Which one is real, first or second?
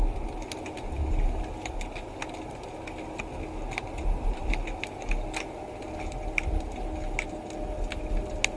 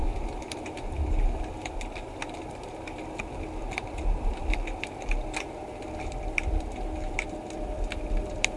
first